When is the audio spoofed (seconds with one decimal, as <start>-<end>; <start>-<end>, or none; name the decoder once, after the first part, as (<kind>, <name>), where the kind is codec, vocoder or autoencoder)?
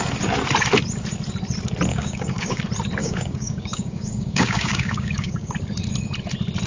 1.9-2.6 (codec, DAC); 3.0-5.5